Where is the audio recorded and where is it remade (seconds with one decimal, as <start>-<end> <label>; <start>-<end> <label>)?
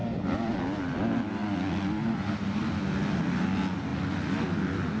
0.0-0.6 remade; 0.6-5.0 recorded